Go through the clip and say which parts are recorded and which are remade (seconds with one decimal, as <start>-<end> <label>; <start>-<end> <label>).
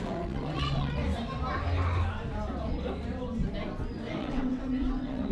0.0-1.0 remade; 1.0-4.2 recorded; 4.2-5.3 remade